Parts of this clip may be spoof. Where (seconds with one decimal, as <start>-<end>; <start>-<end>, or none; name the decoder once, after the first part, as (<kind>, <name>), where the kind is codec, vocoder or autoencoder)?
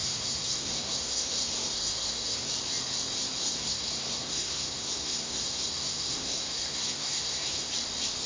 0.0-2.5 (codec, SNAC); 3.4-7.7